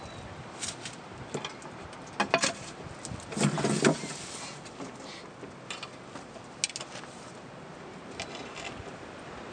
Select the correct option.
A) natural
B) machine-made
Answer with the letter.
A